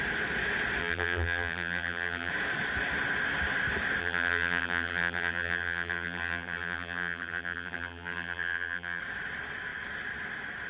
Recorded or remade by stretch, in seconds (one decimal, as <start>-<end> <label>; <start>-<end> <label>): 0.0-0.8 recorded; 0.8-2.3 remade; 2.3-4.0 recorded; 4.0-9.0 remade; 9.0-10.7 recorded